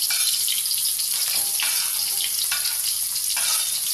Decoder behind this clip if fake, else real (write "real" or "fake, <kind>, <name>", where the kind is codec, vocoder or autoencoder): real